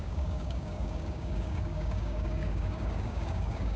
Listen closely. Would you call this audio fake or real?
fake